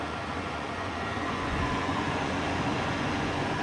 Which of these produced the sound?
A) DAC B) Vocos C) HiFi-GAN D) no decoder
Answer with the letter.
B